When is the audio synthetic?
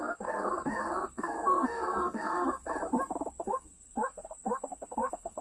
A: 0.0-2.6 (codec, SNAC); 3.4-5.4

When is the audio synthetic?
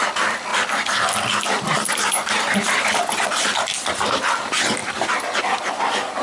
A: 0.0-0.5 (vocoder, BigVGAN v2); 1.5-4.8; 5.4-6.2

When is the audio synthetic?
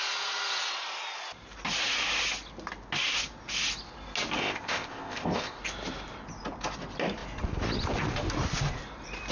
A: 4.4-5.6 (codec, ZipCodec)